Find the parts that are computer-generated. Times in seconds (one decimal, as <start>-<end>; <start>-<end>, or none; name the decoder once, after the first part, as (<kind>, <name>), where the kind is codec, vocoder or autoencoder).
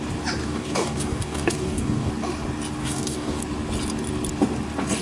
0.4-2.1 (codec, DAC); 2.8-3.4